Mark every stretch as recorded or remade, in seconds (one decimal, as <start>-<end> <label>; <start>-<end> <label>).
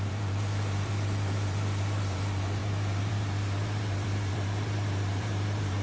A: 0.0-5.8 remade